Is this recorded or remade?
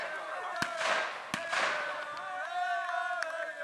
recorded